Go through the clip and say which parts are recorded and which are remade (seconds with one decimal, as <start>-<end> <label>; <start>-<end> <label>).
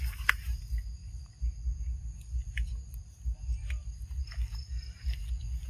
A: 0.0-5.7 recorded